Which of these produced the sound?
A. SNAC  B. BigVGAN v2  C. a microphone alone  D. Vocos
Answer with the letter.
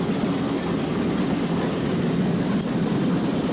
C